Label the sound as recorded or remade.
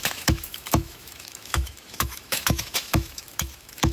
remade